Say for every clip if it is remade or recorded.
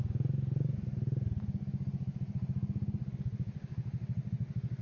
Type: recorded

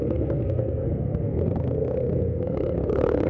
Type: remade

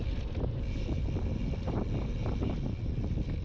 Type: recorded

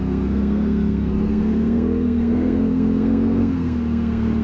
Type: remade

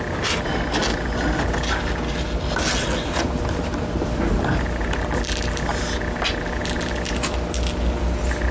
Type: recorded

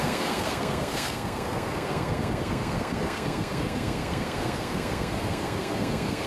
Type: remade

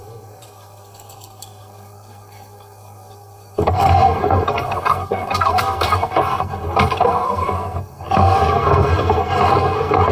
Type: remade